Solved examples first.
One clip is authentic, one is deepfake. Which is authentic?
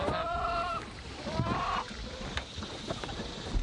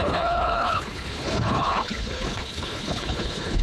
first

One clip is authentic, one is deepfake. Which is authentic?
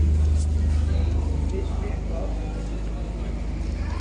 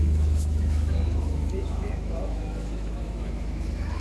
first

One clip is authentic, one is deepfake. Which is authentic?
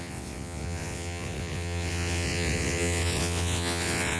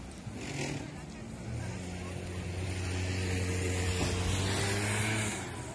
second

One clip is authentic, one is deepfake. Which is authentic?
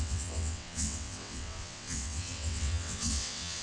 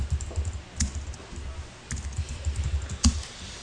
second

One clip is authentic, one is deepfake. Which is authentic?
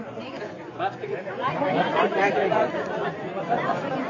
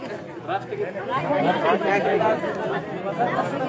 second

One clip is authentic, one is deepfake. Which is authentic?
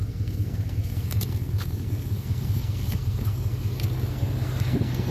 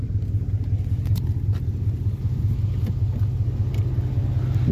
second